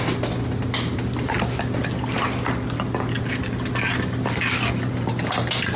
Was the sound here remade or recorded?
recorded